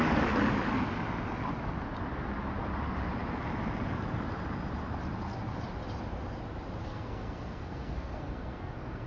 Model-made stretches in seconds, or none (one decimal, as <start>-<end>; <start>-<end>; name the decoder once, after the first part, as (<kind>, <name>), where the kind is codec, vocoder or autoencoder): 6.8-9.1 (codec, SNAC)